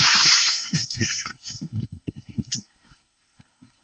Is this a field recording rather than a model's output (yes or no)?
no